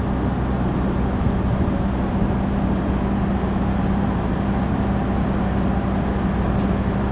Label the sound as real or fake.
real